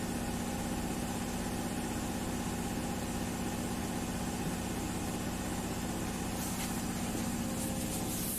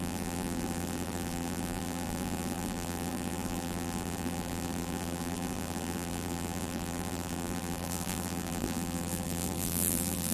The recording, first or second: first